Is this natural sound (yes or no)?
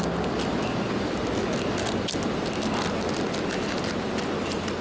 yes